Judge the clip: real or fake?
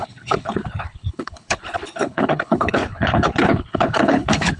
fake